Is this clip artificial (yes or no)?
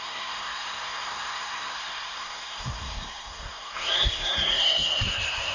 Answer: yes